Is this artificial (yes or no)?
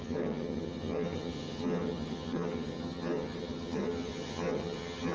yes